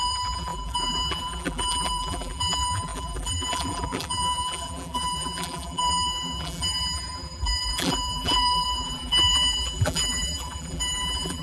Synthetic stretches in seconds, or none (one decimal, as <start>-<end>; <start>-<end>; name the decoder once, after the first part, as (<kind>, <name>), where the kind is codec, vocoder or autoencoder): 0.0-11.4 (vocoder, BigVGAN v2)